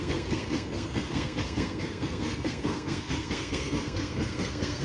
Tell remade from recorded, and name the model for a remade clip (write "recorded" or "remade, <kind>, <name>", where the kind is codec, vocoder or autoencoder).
remade, codec, SNAC